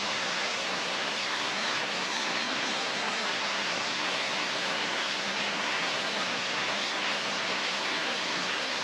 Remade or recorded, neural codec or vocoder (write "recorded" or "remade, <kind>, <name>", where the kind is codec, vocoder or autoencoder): remade, codec, SNAC